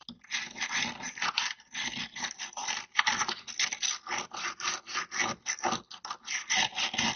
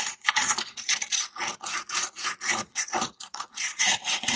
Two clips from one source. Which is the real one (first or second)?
first